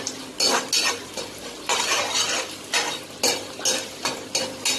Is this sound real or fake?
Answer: real